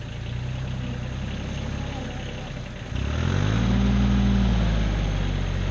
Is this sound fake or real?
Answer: real